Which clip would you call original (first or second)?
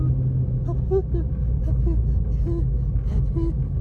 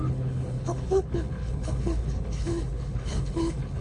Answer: first